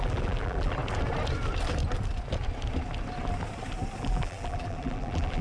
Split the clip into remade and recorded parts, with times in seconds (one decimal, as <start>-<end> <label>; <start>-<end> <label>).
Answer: 0.0-0.8 remade; 0.8-4.0 recorded; 4.0-5.4 remade

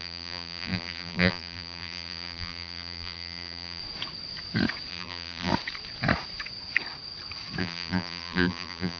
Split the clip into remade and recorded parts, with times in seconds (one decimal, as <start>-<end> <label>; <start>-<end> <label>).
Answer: 0.0-3.8 remade; 3.8-4.9 recorded; 4.9-5.5 remade; 5.5-7.6 recorded; 7.6-9.0 remade

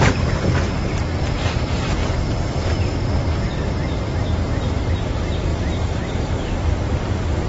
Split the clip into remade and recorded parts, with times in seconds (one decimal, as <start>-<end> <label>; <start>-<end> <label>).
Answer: 0.0-2.0 remade; 2.0-4.9 recorded; 4.9-7.5 remade

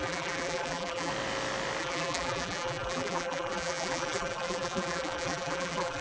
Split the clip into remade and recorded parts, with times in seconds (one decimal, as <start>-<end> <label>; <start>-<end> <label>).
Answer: 0.0-1.1 remade; 1.1-1.8 recorded; 1.8-6.0 remade

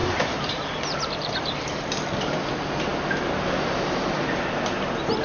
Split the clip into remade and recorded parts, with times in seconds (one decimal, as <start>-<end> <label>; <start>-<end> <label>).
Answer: 0.0-1.8 remade; 1.8-5.2 recorded

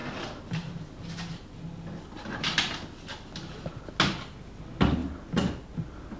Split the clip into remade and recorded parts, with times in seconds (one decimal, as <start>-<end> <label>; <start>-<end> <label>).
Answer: 0.0-6.2 recorded

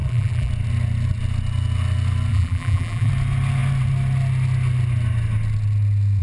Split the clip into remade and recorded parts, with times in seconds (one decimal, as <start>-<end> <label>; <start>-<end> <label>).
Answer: 0.0-0.5 remade; 0.5-2.3 recorded; 2.3-3.1 remade; 3.1-6.2 recorded

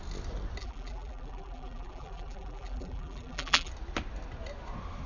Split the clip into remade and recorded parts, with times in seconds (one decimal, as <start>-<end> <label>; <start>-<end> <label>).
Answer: 0.0-0.6 recorded; 0.6-3.7 remade; 3.7-5.1 recorded